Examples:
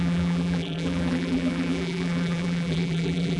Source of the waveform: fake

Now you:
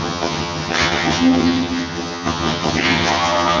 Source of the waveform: fake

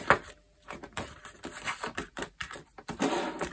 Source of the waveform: fake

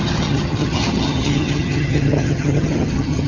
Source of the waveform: fake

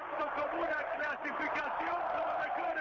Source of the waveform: real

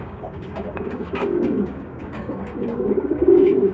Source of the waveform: fake